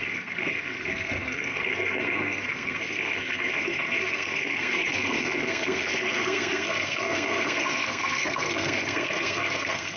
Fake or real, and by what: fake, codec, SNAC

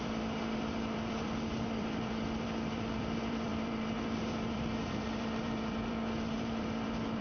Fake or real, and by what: fake, vocoder, BigVGAN v2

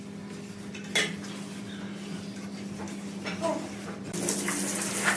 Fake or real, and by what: real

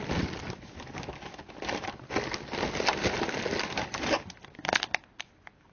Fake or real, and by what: real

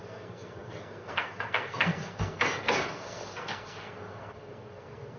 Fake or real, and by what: fake, codec, SNAC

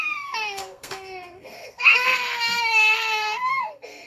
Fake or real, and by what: fake, codec, SNAC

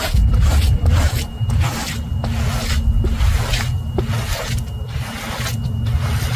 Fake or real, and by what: real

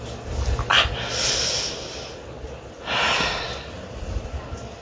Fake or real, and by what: real